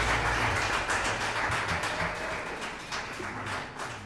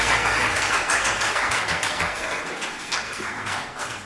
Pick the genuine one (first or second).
first